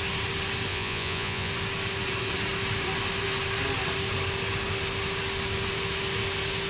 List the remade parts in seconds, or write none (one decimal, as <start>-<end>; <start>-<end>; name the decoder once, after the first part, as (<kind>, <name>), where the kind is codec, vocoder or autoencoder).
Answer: 0.7-1.5 (vocoder, Vocos)